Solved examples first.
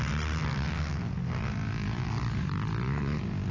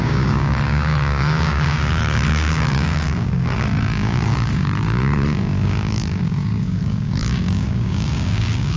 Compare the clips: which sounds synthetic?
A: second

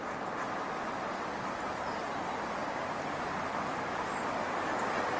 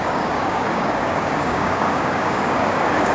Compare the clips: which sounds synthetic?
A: second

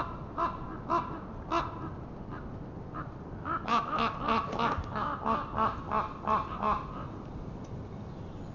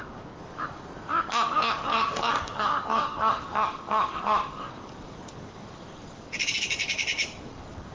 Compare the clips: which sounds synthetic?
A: second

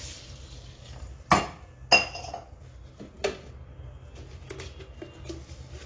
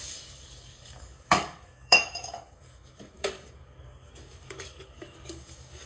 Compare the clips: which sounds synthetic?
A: second